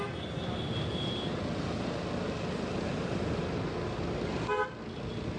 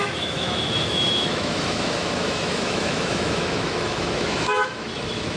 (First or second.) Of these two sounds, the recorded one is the first